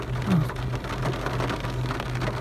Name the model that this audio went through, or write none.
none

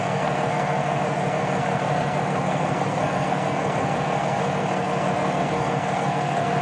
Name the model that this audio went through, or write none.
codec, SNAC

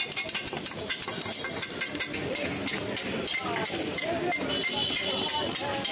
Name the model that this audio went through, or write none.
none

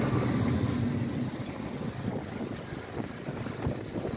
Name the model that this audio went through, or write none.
none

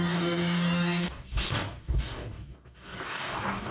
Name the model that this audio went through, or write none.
codec, DAC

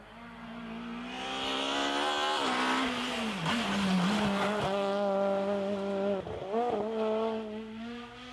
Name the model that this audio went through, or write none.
none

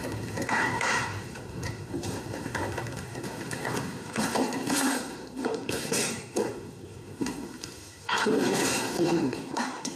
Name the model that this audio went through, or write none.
codec, SNAC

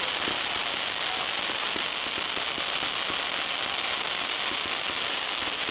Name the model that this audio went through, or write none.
none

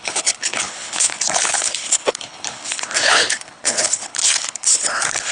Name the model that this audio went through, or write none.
codec, HILCodec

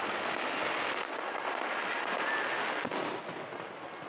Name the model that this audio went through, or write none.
none